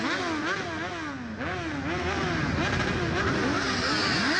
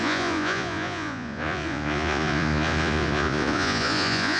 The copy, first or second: second